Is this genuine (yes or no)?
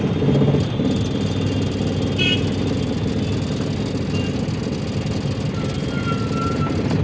yes